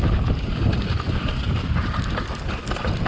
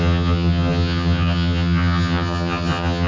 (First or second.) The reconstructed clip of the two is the second